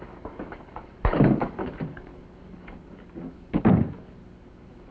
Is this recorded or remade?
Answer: remade